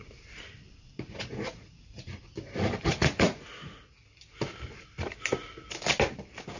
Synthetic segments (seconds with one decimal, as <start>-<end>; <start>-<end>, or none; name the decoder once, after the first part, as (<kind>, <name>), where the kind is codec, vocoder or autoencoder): 0.9-2.2 (vocoder, Vocos); 2.9-4.0